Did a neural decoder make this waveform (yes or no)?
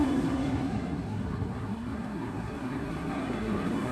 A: yes